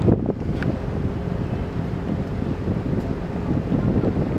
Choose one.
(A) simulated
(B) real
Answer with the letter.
B